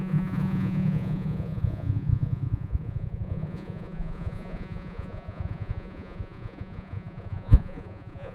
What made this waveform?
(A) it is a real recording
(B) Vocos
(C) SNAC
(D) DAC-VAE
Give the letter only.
B